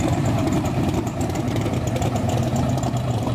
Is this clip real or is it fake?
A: fake